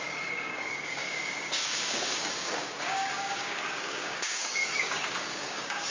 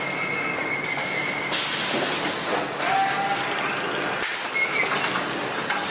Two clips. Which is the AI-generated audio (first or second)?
first